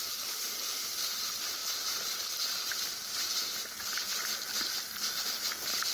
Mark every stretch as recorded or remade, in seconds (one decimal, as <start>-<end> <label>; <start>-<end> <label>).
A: 0.0-5.9 recorded